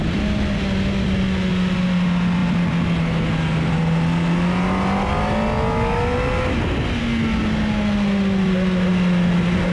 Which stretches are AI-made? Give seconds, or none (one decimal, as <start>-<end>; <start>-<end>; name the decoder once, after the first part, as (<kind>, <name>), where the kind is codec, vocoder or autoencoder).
none